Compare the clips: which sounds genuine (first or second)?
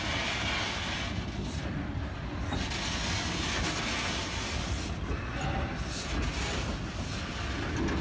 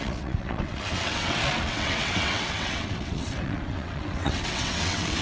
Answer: first